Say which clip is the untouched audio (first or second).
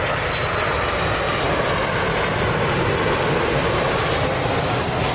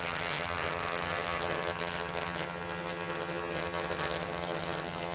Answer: first